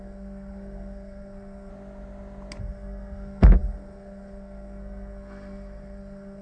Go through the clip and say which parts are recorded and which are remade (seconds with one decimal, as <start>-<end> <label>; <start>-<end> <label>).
0.0-1.7 remade; 1.7-2.6 recorded; 2.6-6.4 remade